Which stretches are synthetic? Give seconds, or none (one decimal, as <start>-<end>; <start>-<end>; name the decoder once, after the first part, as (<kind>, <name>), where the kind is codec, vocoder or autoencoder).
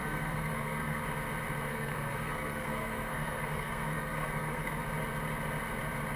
0.0-1.0 (codec, SNAC); 1.7-4.8